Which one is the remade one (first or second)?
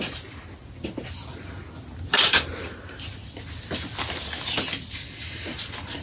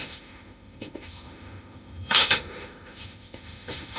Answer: second